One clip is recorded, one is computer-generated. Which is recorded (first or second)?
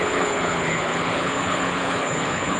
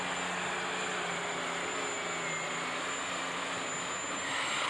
second